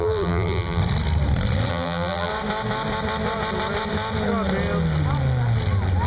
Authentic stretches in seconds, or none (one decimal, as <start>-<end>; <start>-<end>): 0.8-1.7; 2.3-6.1